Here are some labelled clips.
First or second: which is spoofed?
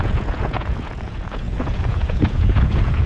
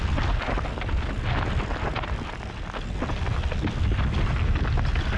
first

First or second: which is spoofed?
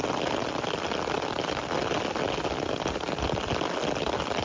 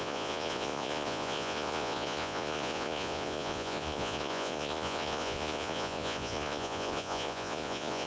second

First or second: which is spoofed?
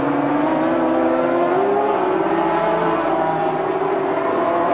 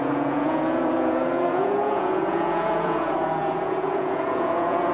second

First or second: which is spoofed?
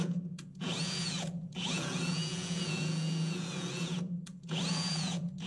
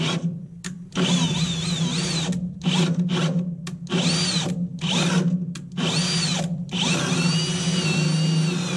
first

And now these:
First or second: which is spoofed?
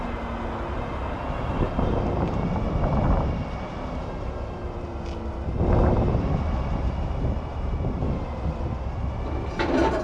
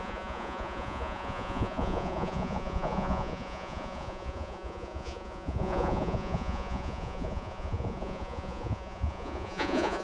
second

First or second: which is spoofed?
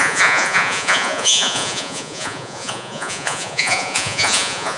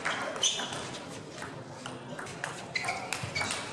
first